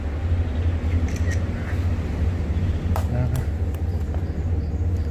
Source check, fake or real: real